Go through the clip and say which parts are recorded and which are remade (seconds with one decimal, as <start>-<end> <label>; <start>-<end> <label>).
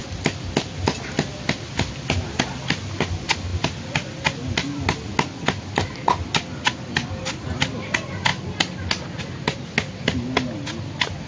0.0-11.3 recorded